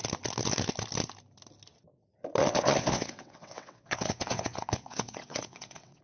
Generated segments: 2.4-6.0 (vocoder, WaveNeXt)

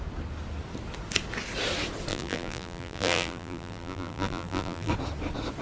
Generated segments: 2.1-4.9 (vocoder, BigVGAN v2)

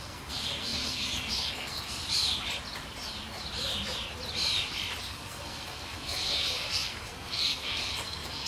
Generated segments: 0.0-2.0 (codec, SNAC); 5.0-8.5

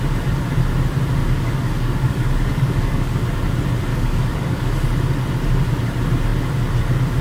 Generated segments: 1.2-3.2 (codec, DAC); 3.9-4.7

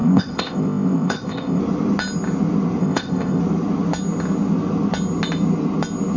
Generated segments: 0.0-1.6 (codec, ZipCodec); 2.8-3.4

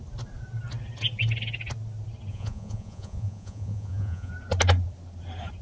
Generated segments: 2.3-4.3 (vocoder, Vocos)

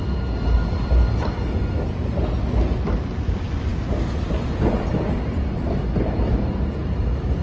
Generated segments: none

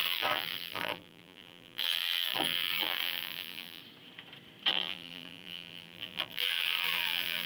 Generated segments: 0.0-3.8 (vocoder, BigVGAN v2); 4.7-7.5